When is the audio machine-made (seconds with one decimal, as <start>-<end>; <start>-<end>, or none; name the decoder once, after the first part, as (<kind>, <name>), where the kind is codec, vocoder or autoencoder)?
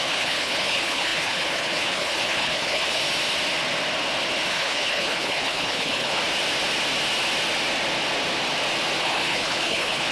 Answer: 0.0-3.0 (codec, HILCodec); 4.5-6.2; 9.0-10.1